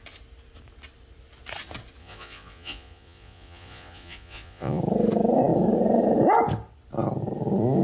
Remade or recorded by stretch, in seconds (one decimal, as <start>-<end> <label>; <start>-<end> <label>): 0.0-2.0 recorded; 2.0-4.8 remade; 4.8-7.8 recorded